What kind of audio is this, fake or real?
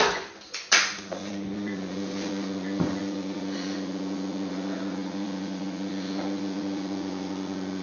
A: fake